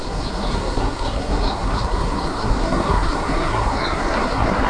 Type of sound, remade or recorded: remade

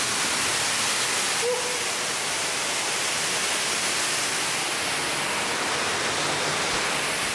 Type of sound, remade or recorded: recorded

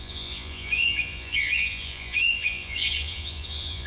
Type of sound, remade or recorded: remade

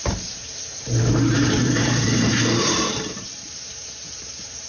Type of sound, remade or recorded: remade